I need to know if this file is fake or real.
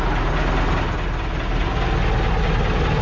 real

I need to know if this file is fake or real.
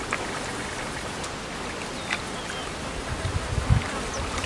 real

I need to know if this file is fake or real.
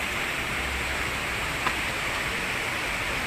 real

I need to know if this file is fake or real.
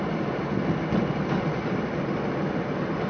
real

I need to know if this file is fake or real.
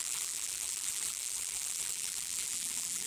fake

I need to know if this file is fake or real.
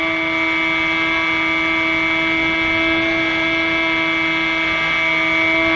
real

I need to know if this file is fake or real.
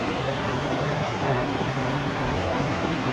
fake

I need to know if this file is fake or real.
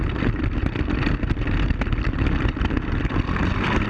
real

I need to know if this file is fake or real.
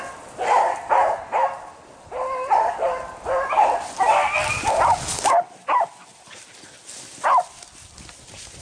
real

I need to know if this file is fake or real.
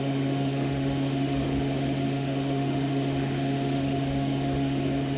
fake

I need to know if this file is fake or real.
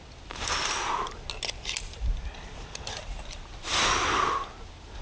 real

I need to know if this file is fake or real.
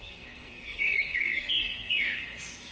fake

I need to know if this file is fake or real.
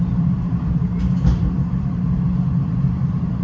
fake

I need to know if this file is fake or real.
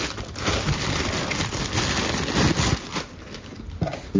real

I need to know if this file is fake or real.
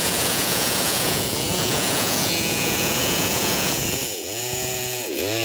fake